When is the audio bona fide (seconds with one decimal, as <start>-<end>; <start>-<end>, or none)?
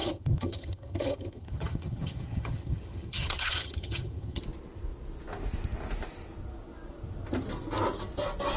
4.4-8.6